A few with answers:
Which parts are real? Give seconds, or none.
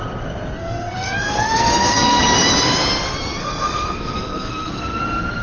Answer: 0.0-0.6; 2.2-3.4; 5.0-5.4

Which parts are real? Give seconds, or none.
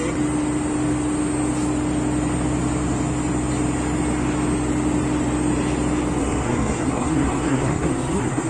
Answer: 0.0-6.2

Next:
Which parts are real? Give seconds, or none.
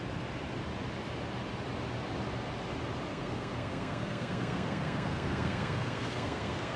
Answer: 0.0-3.1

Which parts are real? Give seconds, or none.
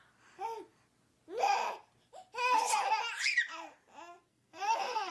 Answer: 0.0-4.3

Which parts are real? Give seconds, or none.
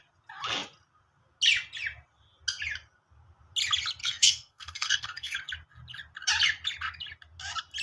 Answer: 0.0-4.0; 5.4-7.8